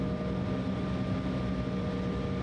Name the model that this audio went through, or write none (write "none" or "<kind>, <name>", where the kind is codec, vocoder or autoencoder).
none